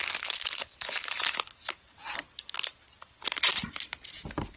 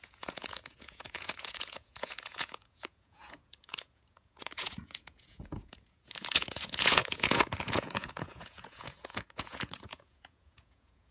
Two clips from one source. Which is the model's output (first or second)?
second